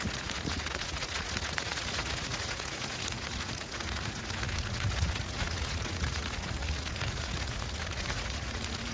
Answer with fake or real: fake